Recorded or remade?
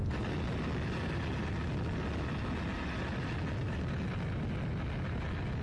recorded